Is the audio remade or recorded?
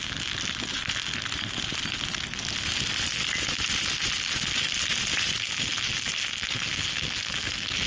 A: recorded